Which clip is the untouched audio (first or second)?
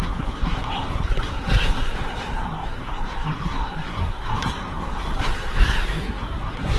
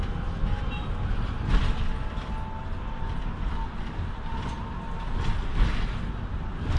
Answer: second